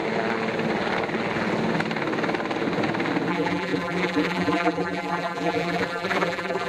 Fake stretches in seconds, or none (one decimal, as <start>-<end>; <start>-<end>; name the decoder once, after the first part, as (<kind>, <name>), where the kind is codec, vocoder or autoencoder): 3.3-6.7 (vocoder, BigVGAN v2)